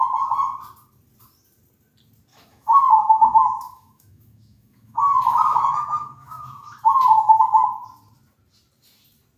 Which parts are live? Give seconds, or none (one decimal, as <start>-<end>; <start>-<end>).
0.0-2.3; 7.4-9.4